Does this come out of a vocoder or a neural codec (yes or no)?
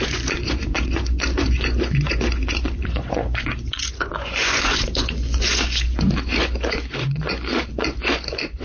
yes